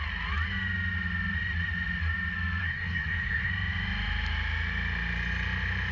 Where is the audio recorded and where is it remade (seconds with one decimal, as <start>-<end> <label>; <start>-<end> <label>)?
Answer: 0.0-2.6 recorded; 2.6-3.5 remade; 3.5-5.9 recorded